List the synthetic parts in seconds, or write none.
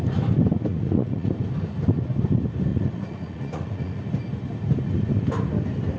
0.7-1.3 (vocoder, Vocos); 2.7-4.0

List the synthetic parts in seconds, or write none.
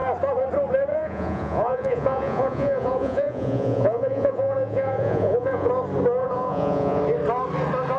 0.9-5.7 (vocoder, Vocos); 6.2-7.0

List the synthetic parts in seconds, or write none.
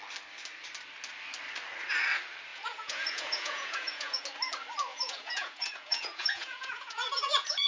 2.5-4.2 (vocoder, Vocos); 4.9-7.7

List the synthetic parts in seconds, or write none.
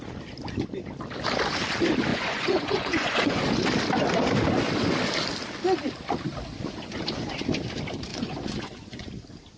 2.1-3.4 (vocoder, Vocos); 8.1-9.1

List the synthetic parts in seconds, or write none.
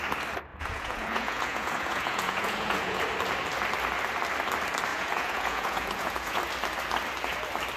0.5-3.0 (vocoder, Vocos); 4.9-6.4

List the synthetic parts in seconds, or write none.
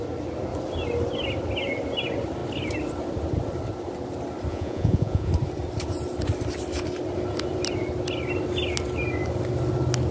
4.5-5.3 (vocoder, Vocos)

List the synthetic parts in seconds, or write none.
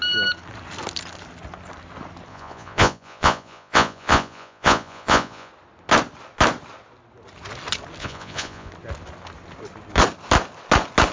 2.3-5.5 (vocoder, Vocos); 8.0-8.7